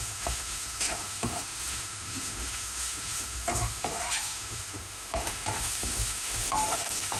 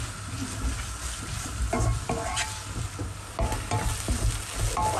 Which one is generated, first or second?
first